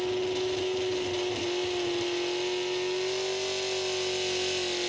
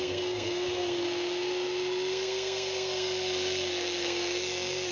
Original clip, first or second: first